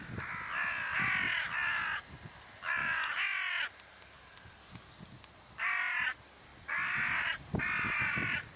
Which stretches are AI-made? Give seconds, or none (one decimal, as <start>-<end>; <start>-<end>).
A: none